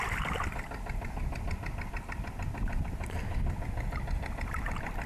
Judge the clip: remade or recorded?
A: recorded